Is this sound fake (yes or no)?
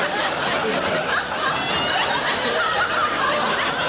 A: no